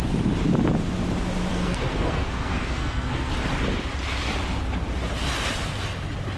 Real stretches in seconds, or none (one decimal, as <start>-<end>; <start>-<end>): 0.0-1.5; 3.3-6.4